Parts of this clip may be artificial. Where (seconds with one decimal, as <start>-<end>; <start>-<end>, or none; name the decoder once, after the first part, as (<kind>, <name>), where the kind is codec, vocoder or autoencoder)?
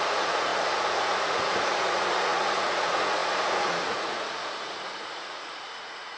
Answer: 0.0-6.2 (vocoder, Vocos)